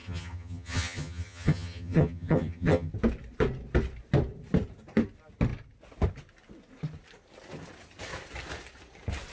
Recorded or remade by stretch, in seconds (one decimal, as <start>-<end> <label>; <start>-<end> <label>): 0.0-2.9 remade; 2.9-9.3 recorded